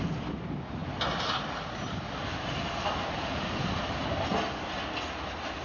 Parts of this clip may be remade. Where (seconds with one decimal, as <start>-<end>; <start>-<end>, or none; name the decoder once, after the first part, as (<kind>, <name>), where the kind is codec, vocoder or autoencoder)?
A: none